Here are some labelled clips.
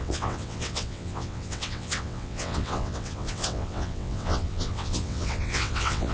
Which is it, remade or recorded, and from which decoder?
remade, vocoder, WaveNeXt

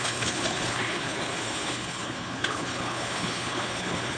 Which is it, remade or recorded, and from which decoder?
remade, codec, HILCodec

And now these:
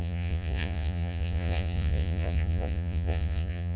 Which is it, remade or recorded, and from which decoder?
remade, vocoder, Vocos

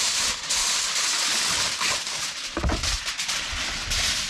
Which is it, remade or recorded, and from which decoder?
recorded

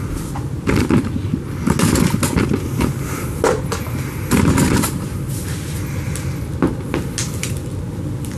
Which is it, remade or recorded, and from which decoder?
recorded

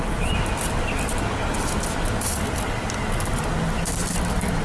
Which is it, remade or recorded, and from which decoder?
recorded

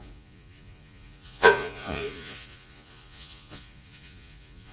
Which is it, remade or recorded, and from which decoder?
remade, vocoder, Vocos